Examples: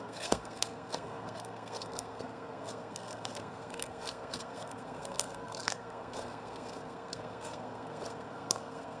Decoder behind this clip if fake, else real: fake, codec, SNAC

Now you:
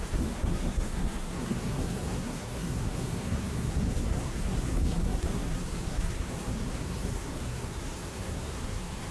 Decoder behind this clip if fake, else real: fake, codec, SNAC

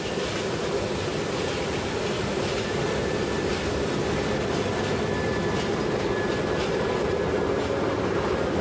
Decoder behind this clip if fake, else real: real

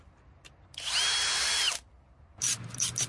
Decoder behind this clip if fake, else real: real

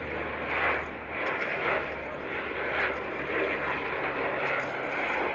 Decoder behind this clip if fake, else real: real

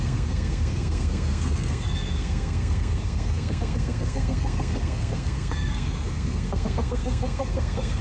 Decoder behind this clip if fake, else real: fake, codec, SNAC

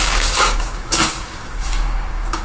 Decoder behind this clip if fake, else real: fake, codec, DAC